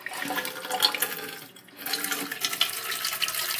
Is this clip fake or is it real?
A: real